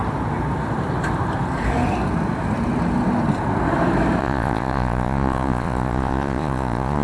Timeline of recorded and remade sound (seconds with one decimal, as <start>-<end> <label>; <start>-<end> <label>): 0.0-4.2 recorded; 4.2-7.0 remade